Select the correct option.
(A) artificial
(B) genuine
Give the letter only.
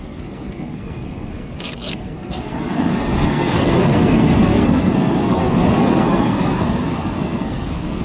A